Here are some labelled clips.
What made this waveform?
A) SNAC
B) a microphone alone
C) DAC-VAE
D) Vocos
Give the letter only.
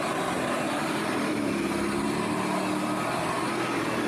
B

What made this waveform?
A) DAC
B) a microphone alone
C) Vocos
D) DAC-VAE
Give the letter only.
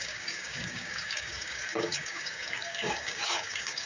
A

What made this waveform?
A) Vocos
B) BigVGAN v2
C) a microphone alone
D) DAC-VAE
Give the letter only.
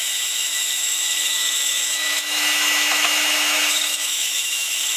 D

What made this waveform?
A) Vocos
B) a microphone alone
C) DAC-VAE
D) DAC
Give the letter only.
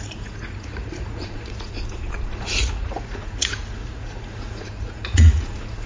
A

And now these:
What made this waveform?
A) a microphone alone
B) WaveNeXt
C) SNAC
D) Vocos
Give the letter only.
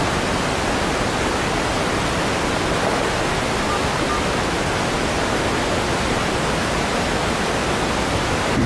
A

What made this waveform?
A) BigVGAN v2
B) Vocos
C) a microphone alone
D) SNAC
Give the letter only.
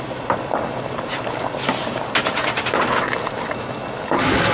C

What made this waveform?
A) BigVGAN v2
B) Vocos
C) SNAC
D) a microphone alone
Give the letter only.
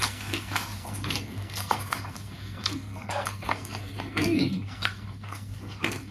C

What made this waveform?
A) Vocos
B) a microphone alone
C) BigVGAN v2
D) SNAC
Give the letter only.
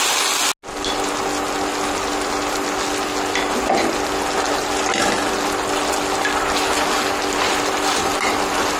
B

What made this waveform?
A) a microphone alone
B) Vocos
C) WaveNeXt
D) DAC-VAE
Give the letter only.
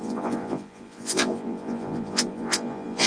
B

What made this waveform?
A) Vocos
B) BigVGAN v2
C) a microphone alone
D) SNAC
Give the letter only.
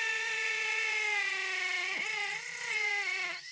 A